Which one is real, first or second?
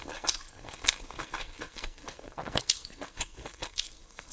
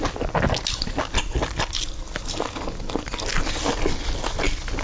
second